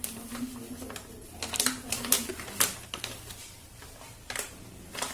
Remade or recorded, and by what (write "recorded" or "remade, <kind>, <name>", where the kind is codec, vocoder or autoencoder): recorded